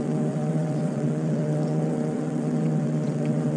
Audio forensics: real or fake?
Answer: fake